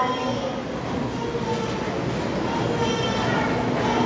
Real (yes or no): yes